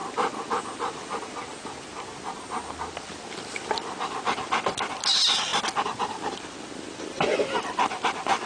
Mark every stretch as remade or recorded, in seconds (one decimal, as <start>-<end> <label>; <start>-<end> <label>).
0.0-8.5 recorded